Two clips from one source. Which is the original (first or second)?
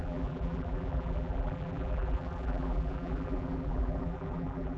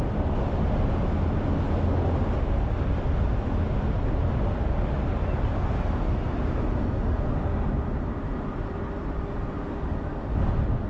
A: second